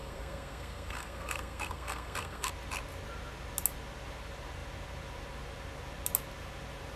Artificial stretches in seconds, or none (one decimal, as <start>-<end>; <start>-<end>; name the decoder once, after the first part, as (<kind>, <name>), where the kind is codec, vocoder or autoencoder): 0.0-2.5 (codec, SNAC)